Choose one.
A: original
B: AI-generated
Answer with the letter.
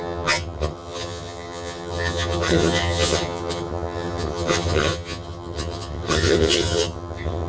B